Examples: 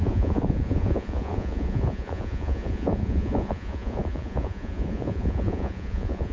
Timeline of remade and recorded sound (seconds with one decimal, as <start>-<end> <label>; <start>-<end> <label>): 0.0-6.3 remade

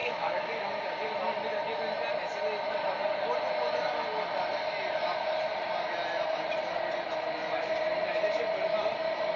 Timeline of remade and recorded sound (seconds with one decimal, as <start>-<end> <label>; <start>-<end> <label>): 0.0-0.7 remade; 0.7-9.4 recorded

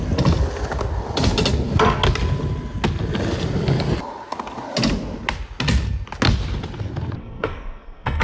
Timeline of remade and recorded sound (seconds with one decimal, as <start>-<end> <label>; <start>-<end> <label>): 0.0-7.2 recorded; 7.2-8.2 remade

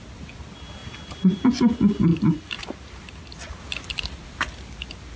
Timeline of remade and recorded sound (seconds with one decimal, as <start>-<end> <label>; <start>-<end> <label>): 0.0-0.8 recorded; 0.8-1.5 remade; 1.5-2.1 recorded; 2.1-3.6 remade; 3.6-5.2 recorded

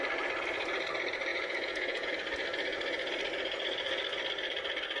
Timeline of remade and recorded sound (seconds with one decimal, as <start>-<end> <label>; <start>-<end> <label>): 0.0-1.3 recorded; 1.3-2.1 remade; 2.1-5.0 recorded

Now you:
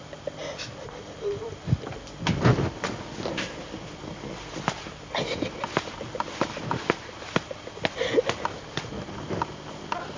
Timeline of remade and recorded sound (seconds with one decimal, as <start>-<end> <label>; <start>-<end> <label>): 0.0-10.2 recorded